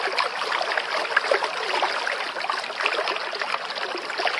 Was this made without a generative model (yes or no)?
yes